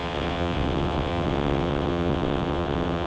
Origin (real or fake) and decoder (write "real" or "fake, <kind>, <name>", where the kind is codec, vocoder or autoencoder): fake, vocoder, WaveNeXt